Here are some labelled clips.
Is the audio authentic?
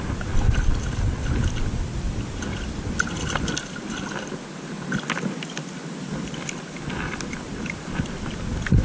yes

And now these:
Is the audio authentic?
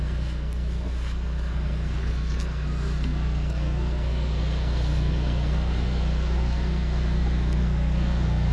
no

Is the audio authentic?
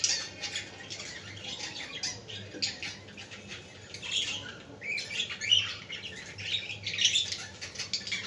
yes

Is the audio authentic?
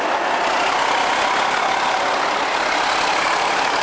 yes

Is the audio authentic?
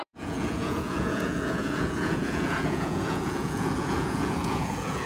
no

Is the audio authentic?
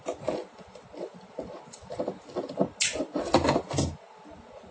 yes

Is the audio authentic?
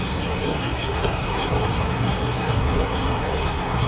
no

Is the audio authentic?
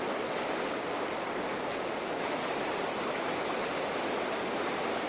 yes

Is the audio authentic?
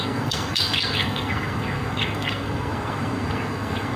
no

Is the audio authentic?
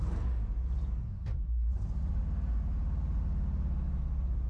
yes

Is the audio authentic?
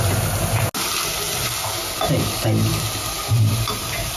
yes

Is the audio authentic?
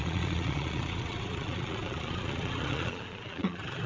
no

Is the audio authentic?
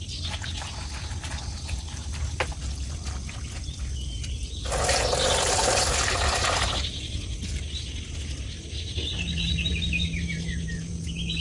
yes